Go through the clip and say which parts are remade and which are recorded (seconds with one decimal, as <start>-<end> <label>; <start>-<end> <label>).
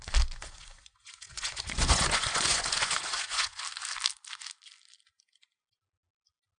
0.0-0.4 recorded; 0.4-3.6 remade; 3.6-6.6 recorded